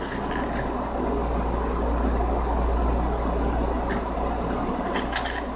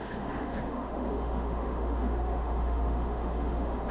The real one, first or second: first